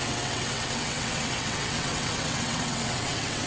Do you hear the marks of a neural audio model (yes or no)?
yes